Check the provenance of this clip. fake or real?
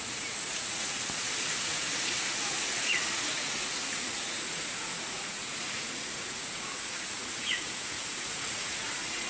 fake